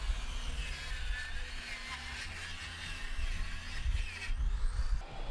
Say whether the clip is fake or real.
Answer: real